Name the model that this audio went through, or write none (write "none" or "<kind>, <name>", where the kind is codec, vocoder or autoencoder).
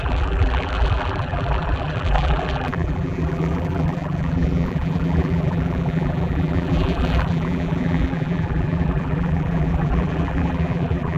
vocoder, BigVGAN v2